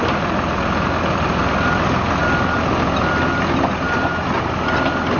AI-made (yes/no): no